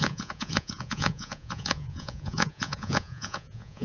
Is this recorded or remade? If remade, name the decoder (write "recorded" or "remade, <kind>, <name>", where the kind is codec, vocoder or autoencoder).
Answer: remade, vocoder, Vocos